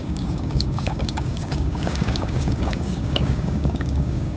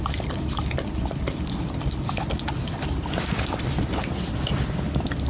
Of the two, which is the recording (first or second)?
second